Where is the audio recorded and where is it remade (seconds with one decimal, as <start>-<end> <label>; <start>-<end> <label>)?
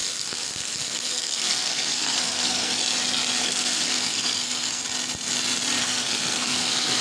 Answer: 0.0-2.8 remade; 2.8-3.4 recorded; 3.4-4.8 remade; 4.8-5.8 recorded; 5.8-7.0 remade